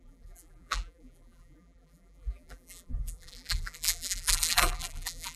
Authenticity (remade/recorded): remade